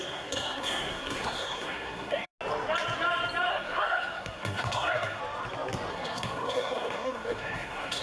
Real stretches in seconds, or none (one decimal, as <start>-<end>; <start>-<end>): 2.3-3.5; 5.2-5.9